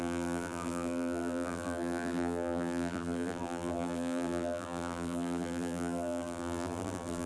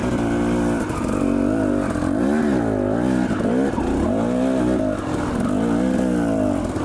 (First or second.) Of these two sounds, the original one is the second